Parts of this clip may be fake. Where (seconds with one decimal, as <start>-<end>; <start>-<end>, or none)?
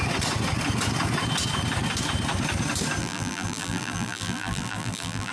3.0-5.3